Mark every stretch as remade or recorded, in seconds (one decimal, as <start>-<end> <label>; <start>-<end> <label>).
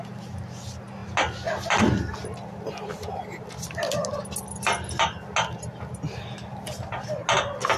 0.0-7.8 recorded